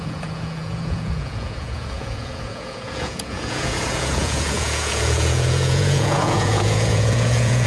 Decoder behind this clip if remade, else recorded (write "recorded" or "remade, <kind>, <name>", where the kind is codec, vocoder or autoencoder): remade, vocoder, Vocos